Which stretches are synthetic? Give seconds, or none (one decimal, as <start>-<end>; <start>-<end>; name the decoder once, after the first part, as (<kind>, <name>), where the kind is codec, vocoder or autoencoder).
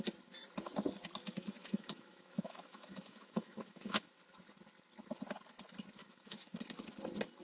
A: 1.2-4.2 (autoencoder, DAC-VAE); 6.0-6.6